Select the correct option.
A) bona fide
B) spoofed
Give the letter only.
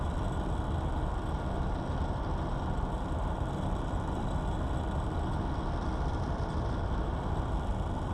A